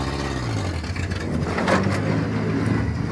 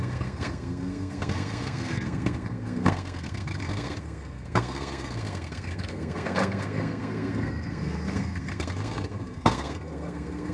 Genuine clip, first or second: first